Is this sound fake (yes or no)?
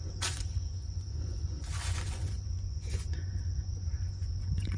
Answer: yes